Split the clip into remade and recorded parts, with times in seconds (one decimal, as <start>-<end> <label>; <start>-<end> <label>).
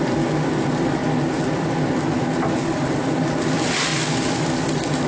0.0-1.0 remade; 1.0-1.6 recorded; 1.6-5.1 remade